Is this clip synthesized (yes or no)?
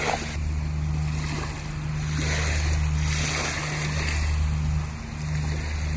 no